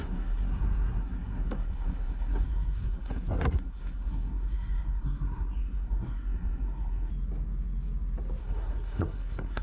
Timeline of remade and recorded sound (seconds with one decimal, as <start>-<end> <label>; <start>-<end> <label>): 0.0-7.1 remade; 7.1-8.4 recorded; 8.4-9.6 remade